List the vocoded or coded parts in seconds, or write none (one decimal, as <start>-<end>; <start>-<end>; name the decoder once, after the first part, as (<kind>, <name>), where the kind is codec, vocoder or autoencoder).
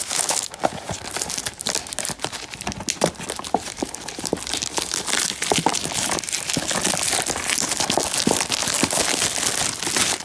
0.0-0.6 (autoencoder, DAC-VAE)